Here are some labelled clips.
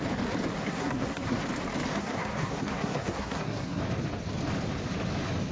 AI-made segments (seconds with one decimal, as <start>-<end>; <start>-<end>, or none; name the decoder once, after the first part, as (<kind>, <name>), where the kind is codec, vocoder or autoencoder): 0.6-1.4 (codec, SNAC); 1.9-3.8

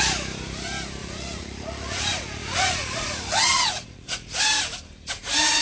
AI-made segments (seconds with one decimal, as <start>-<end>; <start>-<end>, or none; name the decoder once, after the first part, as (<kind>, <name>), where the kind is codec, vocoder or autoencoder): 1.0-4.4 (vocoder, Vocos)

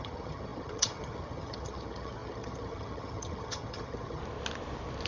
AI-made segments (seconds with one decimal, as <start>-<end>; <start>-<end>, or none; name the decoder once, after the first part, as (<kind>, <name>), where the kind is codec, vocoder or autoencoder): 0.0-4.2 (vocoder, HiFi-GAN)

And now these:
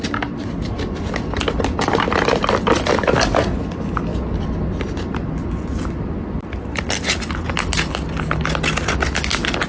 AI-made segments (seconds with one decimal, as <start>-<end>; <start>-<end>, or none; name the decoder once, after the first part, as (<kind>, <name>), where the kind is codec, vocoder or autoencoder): none